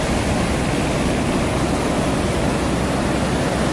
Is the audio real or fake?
real